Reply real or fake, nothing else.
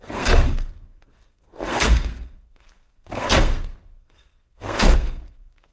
fake